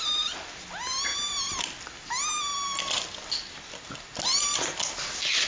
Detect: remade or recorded recorded